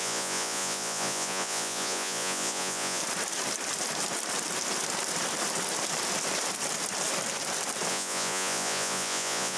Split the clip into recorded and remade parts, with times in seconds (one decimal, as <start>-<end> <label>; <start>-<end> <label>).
0.0-3.0 remade; 3.0-7.9 recorded; 7.9-9.6 remade